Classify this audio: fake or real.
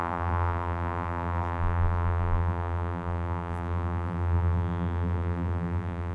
fake